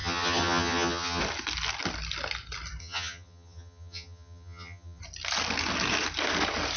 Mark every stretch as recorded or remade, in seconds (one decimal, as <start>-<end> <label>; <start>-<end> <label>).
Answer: 0.0-1.2 remade; 1.2-2.8 recorded; 2.8-5.0 remade; 5.0-6.8 recorded